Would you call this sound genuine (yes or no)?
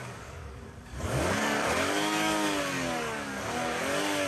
no